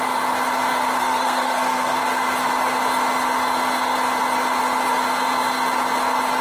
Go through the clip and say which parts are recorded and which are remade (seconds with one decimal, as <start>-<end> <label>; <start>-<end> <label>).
0.0-1.0 recorded; 1.0-2.0 remade; 2.0-6.4 recorded